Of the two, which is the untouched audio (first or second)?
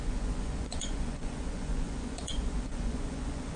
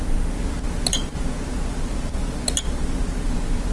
second